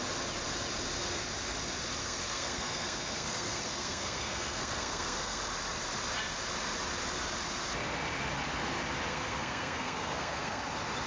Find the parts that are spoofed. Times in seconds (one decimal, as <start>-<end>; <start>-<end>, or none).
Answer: 2.0-5.4; 9.1-10.6